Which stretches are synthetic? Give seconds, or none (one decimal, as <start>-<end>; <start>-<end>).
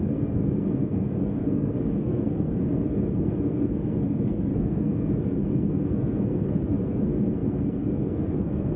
0.0-8.8